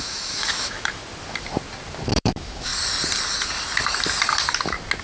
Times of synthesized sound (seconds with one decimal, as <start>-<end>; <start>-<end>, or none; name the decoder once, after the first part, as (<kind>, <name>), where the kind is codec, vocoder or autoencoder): 0.0-1.0 (autoencoder, DAC-VAE); 2.1-2.7